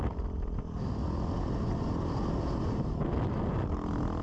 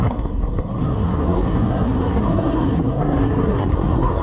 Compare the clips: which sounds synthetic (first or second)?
second